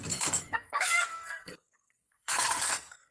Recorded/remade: remade